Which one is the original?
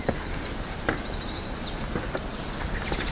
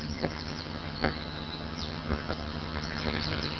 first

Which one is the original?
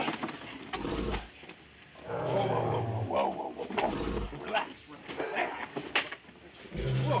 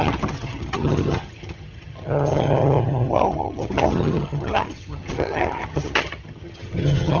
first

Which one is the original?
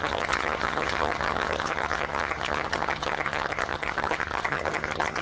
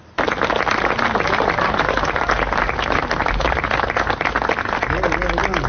second